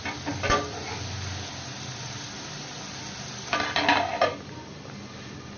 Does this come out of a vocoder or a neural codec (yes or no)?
no